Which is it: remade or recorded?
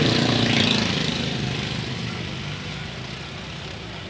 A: remade